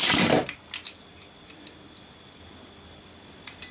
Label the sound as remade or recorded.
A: recorded